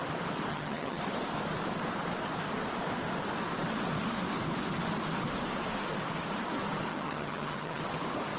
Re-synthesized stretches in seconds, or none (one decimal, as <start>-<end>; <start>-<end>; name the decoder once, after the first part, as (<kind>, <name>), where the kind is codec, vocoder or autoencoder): 0.5-1.0 (vocoder, HiFi-GAN); 6.9-7.8